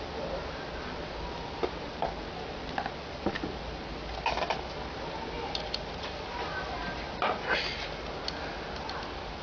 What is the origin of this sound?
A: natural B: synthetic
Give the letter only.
A